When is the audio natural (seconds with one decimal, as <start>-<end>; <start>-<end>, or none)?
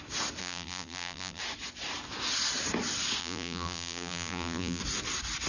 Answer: 0.0-0.4; 1.4-3.2; 4.8-5.5